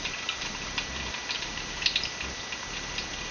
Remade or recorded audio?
recorded